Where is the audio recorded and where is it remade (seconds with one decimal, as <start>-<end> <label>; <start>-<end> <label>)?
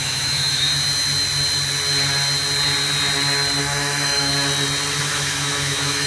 0.0-0.7 remade; 0.7-3.6 recorded; 3.6-4.3 remade; 4.3-5.0 recorded; 5.0-6.1 remade